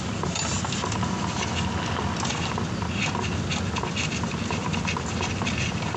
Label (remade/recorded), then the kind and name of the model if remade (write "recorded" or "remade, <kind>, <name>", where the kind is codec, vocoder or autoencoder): recorded